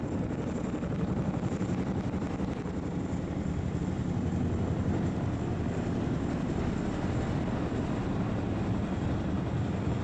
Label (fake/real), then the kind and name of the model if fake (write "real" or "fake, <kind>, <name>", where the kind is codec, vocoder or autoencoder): fake, vocoder, BigVGAN v2